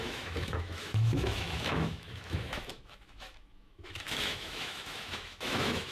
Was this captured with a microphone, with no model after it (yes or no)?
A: no